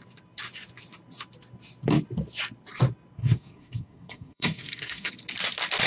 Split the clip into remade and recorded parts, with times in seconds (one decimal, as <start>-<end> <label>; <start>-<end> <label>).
0.0-3.2 recorded; 3.2-5.1 remade; 5.1-5.9 recorded